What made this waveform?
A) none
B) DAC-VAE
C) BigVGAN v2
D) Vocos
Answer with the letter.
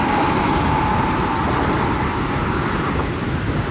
A